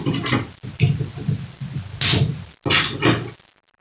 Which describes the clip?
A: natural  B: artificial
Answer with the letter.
A